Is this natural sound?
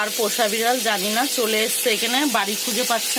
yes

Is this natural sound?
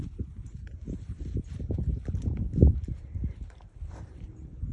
no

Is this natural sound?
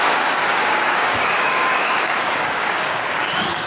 no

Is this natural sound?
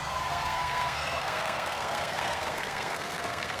no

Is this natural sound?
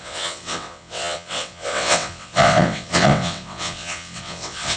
no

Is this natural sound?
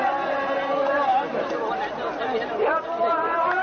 yes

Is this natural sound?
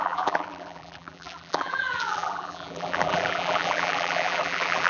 no